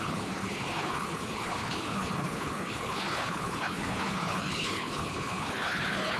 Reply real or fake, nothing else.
fake